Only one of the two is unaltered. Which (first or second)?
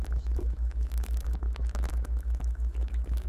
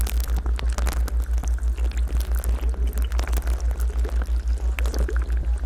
second